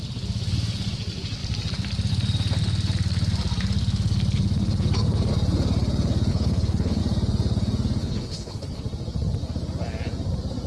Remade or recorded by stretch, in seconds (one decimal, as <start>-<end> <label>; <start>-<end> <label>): 0.0-6.3 recorded; 6.3-7.0 remade; 7.0-8.0 recorded; 8.0-8.8 remade; 8.8-10.7 recorded